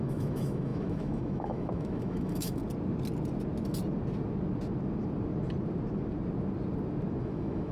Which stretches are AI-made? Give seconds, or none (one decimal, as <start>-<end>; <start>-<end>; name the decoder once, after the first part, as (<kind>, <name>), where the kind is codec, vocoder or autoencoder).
0.0-2.6 (autoencoder, DAC-VAE); 7.2-7.7